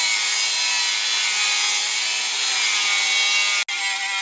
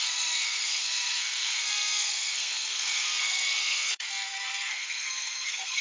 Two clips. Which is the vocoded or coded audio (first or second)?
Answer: second